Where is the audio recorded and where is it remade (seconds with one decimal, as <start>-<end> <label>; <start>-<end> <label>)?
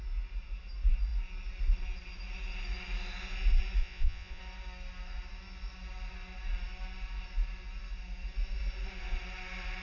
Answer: 0.0-3.8 recorded; 3.8-4.4 remade; 4.4-9.8 recorded